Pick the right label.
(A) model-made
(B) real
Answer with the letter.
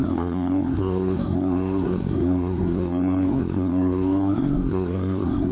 A